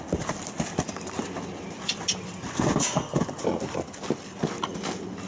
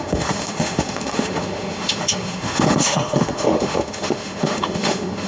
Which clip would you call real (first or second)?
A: first